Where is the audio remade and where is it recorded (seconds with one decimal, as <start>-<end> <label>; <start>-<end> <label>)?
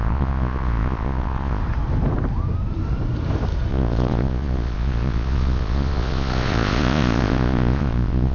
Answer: 0.0-1.6 remade; 1.6-3.7 recorded; 3.7-8.3 remade